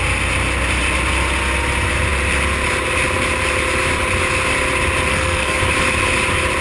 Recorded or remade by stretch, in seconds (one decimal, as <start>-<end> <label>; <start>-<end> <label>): 0.0-5.1 recorded; 5.1-5.6 remade; 5.6-6.6 recorded